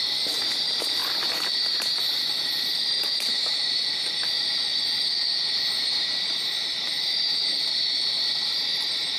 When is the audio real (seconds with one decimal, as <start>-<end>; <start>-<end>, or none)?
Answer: 1.0-1.5; 4.3-5.5

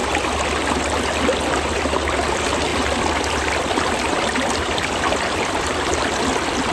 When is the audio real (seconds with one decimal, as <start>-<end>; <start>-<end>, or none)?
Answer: 0.0-2.7; 6.2-6.7

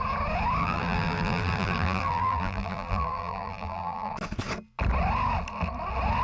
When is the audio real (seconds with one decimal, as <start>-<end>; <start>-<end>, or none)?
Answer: 0.0-0.6; 4.1-6.2

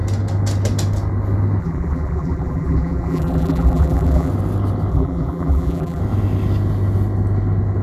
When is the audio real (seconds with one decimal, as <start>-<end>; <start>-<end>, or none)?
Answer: 0.0-1.6; 4.3-4.9; 6.0-7.8

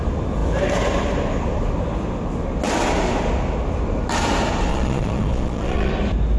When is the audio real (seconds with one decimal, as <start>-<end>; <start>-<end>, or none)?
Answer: 0.0-4.7; 5.9-6.4

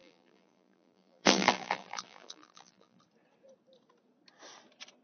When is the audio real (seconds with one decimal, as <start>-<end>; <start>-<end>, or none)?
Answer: 3.0-5.0

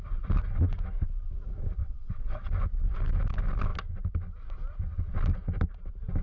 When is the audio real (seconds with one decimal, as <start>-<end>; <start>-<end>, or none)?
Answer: 0.0-1.8; 2.5-6.2

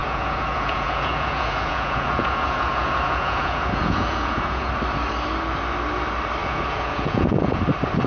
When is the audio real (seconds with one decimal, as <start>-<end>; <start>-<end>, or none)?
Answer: 4.7-6.4; 7.6-8.1